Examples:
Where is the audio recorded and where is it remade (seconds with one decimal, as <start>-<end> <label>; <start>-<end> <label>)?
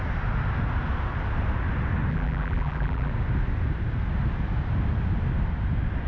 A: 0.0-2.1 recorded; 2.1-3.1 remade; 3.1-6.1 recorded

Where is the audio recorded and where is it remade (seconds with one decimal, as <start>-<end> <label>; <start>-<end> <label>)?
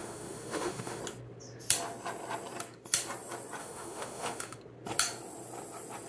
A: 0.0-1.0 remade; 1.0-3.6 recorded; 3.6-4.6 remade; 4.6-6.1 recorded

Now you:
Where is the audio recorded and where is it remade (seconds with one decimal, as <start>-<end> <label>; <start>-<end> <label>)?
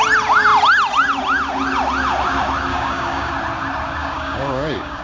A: 0.0-2.7 recorded; 2.7-3.3 remade; 3.3-4.0 recorded; 4.0-5.0 remade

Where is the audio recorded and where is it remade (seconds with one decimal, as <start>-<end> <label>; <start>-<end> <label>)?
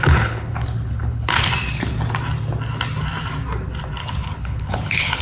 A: 0.0-1.5 remade; 1.5-4.0 recorded; 4.0-5.2 remade